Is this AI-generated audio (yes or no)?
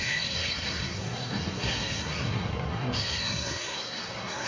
yes